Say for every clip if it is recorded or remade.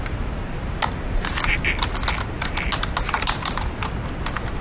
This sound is recorded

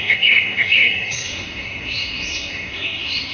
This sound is remade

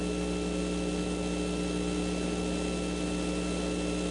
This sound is recorded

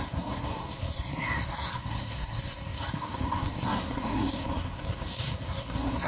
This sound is remade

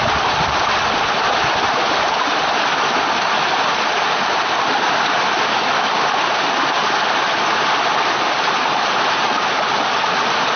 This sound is recorded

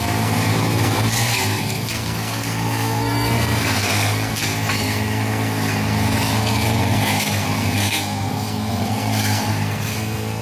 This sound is remade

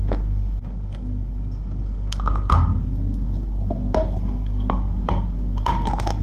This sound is remade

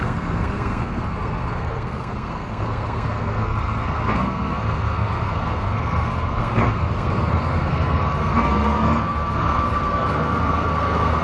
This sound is remade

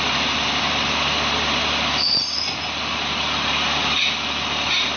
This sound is recorded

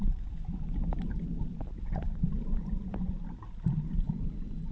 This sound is recorded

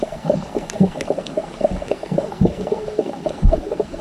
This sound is remade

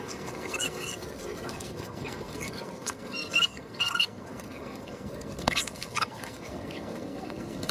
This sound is remade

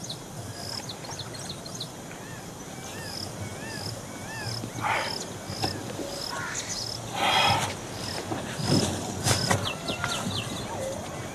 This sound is recorded